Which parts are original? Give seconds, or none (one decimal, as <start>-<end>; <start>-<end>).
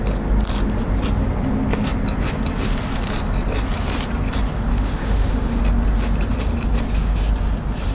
0.0-4.7; 5.6-7.9